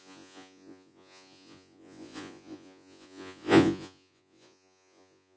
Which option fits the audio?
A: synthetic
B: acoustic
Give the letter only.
A